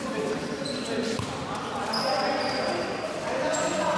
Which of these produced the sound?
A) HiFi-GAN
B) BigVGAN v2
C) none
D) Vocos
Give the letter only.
C